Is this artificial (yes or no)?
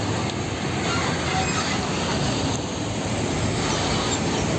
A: no